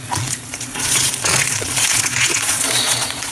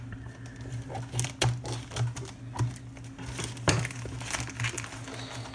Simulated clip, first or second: first